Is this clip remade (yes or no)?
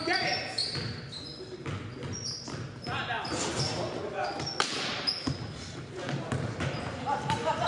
no